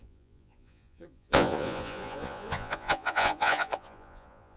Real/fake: fake